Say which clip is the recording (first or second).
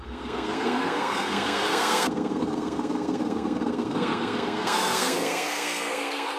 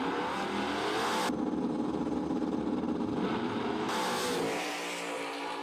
second